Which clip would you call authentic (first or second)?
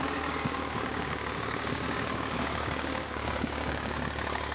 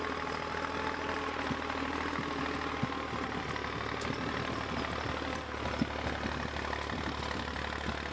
second